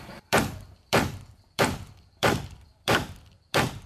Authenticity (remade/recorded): remade